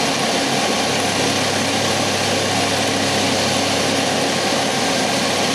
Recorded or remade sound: recorded